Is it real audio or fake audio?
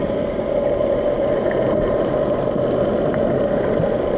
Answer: real